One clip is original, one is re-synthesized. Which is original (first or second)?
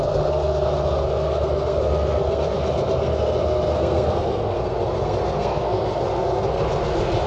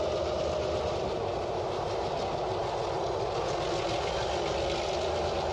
second